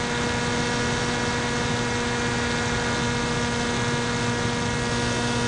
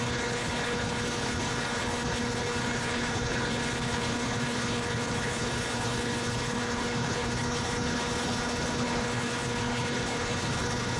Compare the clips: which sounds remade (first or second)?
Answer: second